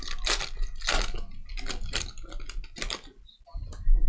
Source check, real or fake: real